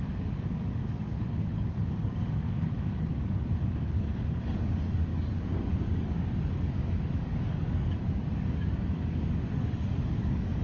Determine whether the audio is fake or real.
fake